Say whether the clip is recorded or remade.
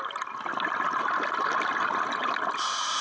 recorded